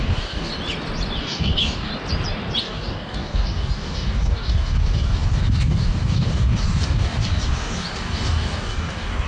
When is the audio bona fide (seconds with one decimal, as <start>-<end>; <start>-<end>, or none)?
0.5-1.2; 1.9-2.6